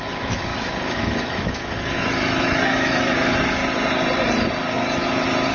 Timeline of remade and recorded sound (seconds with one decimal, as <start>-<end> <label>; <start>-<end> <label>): 0.0-3.6 remade; 3.6-5.5 recorded